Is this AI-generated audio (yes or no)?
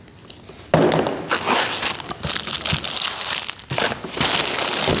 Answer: no